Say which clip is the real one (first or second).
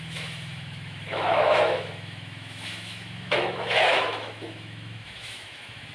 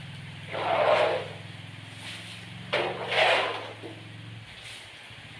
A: second